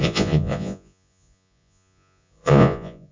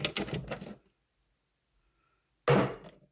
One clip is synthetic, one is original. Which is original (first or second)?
second